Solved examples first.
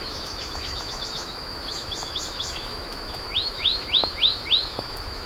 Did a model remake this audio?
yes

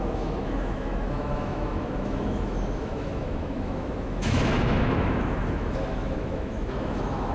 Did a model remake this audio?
yes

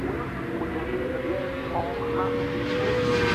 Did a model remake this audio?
no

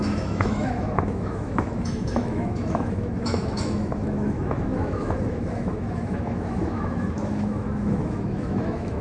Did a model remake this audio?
yes